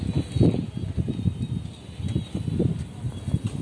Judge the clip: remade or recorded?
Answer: recorded